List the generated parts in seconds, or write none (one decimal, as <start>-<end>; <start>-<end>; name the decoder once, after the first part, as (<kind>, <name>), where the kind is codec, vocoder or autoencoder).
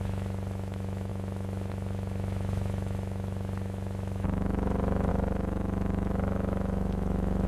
0.0-7.5 (autoencoder, DAC-VAE)